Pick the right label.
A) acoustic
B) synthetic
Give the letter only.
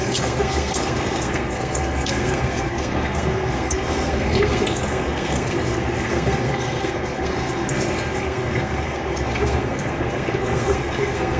B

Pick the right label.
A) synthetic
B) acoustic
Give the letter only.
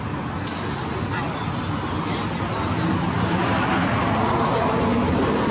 B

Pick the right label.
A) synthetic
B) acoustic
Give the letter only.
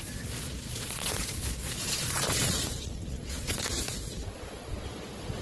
A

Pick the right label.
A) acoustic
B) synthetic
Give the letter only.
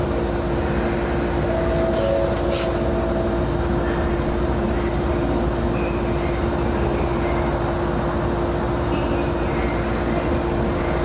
A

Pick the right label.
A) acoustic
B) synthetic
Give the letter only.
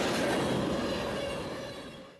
A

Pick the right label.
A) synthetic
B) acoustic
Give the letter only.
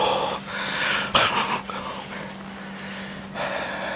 B